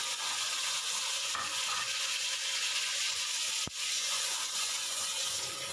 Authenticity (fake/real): fake